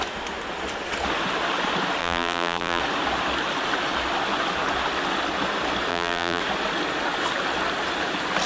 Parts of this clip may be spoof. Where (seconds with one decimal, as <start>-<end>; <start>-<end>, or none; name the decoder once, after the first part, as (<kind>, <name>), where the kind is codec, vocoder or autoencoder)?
2.0-2.8 (vocoder, BigVGAN v2); 5.9-6.4